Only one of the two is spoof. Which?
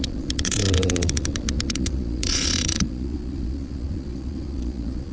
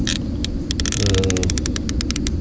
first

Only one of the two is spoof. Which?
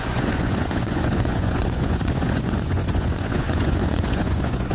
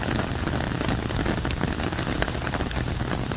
first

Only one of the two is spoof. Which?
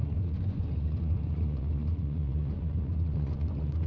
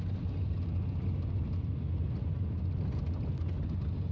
first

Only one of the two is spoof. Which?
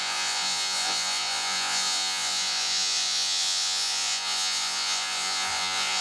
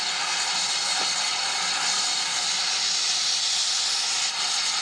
first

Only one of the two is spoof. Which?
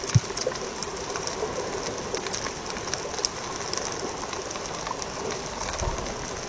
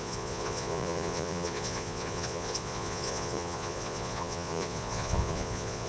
second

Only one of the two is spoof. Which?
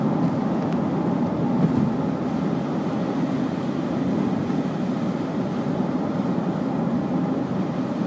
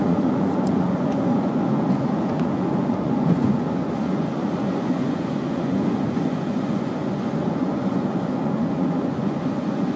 second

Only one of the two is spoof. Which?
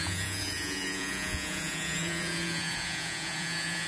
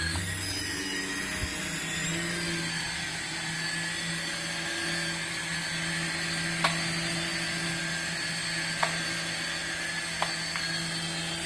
first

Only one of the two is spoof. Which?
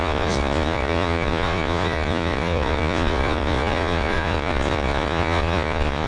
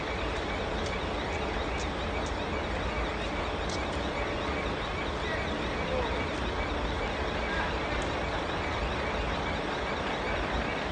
first